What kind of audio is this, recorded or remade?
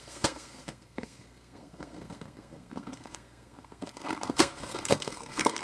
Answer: remade